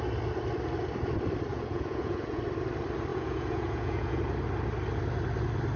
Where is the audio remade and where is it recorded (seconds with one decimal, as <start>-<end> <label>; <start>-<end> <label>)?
0.0-1.5 recorded; 1.5-2.4 remade; 2.4-3.1 recorded; 3.1-4.2 remade; 4.2-5.8 recorded